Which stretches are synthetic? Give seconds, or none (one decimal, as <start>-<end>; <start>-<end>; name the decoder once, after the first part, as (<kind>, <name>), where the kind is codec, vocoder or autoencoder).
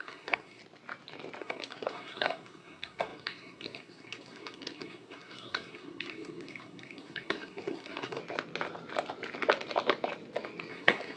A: 0.0-0.6 (codec, SNAC); 1.4-8.2; 10.7-11.2